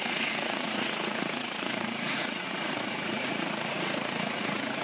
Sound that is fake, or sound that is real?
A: fake